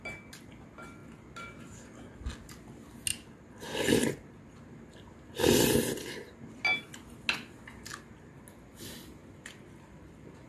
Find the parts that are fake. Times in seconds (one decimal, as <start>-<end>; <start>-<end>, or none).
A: 9.2-10.5